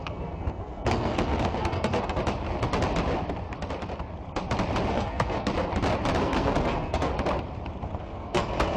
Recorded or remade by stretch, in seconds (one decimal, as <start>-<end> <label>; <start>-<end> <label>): 0.0-2.2 remade; 2.2-4.9 recorded; 4.9-5.5 remade; 5.5-6.2 recorded; 6.2-7.1 remade; 7.1-8.0 recorded; 8.0-8.8 remade